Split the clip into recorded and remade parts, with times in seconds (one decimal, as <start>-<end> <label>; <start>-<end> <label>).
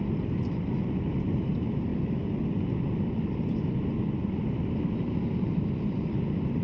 0.0-6.6 remade